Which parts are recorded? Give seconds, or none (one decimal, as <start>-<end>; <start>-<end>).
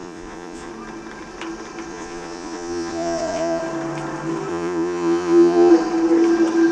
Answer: 0.7-1.9; 3.6-4.5; 5.7-6.7